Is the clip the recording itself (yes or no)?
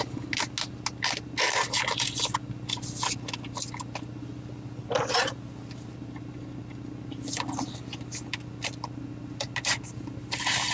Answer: yes